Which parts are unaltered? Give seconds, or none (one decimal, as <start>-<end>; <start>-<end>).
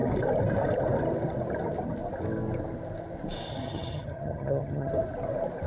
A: 0.0-3.5; 4.9-5.7